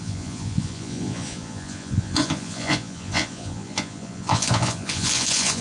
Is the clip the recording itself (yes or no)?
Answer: no